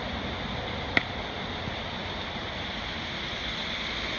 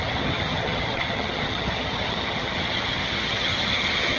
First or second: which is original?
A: first